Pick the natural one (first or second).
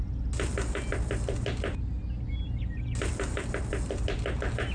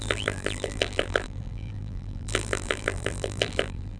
first